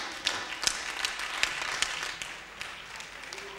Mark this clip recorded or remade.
recorded